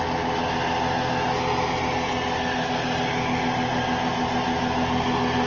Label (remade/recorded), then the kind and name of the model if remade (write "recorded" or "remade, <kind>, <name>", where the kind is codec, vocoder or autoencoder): recorded